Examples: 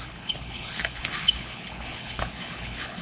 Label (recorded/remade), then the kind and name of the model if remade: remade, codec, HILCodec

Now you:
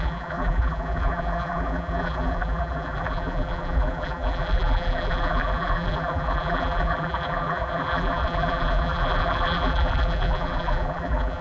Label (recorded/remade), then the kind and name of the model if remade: remade, vocoder, BigVGAN v2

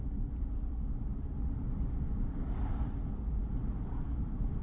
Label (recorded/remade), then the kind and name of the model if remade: remade, vocoder, BigVGAN v2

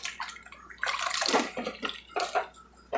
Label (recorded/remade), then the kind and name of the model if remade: recorded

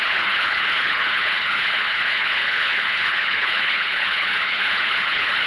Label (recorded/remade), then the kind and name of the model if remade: remade, codec, HILCodec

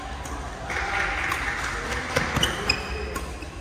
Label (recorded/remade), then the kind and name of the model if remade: recorded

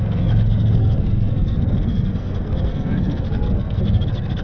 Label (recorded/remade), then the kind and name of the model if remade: remade, codec, SNAC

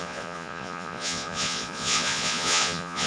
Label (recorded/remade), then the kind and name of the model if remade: remade, vocoder, Vocos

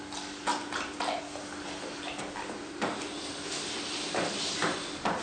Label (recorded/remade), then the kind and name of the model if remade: recorded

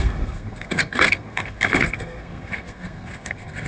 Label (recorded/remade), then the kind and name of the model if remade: remade, codec, SNAC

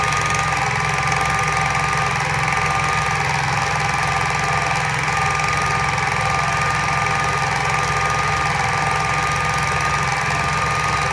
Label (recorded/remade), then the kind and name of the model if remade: recorded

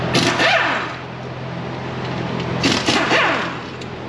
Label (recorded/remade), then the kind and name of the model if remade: recorded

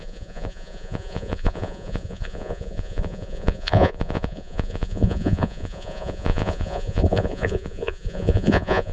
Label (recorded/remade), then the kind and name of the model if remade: remade, vocoder, Vocos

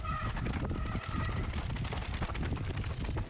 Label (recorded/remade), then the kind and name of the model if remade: recorded